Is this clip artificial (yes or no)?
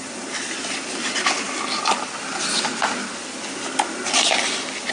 no